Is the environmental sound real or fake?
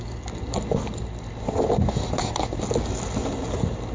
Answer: real